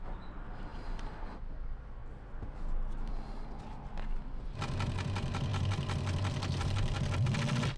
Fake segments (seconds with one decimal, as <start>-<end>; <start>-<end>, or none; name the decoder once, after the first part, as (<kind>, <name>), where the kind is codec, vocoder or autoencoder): none